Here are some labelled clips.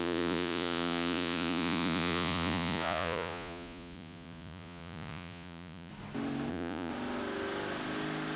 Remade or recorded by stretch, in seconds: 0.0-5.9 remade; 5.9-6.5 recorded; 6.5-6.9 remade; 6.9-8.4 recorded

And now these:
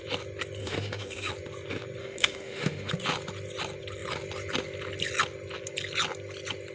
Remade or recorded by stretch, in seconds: 0.0-0.6 recorded; 0.6-1.3 remade; 1.3-2.0 recorded; 2.0-2.9 remade; 2.9-6.7 recorded

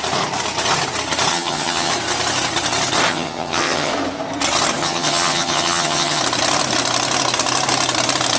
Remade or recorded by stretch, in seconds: 0.0-1.3 recorded; 1.3-1.9 remade; 1.9-3.1 recorded; 3.1-3.9 remade; 3.9-4.8 recorded; 4.8-6.2 remade; 6.2-8.4 recorded